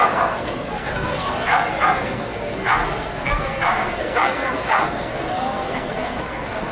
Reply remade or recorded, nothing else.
remade